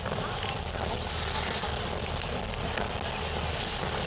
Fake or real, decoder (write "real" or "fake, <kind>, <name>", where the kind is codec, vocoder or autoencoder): real